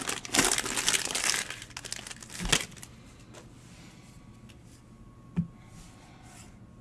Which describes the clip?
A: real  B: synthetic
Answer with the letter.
A